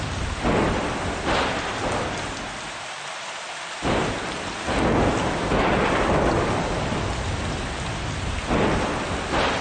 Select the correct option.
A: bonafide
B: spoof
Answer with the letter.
A